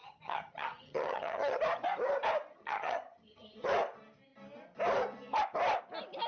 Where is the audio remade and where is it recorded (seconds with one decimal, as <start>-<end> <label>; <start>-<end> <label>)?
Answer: 0.0-1.6 remade; 1.6-2.5 recorded; 2.5-3.6 remade; 3.6-6.3 recorded